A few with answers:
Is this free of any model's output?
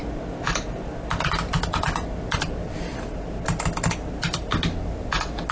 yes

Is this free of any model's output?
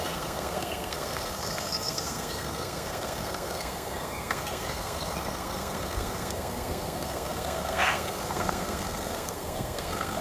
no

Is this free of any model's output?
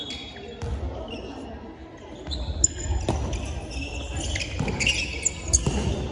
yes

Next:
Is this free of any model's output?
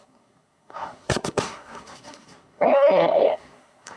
no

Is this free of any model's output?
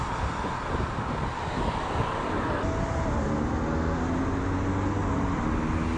yes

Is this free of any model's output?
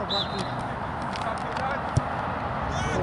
yes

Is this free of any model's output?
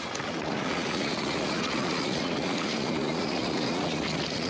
no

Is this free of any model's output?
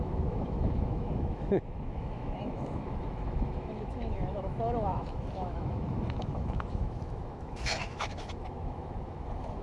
no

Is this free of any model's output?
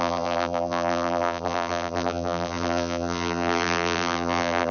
no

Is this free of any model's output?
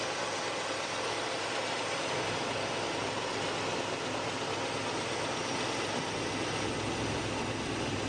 yes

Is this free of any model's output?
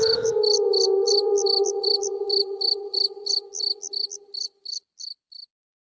yes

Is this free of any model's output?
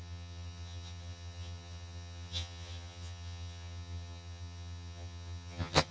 no